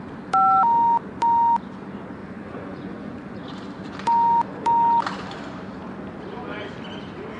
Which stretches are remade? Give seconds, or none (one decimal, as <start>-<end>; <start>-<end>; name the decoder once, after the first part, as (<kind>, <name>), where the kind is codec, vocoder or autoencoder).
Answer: 2.2-3.4 (vocoder, Vocos)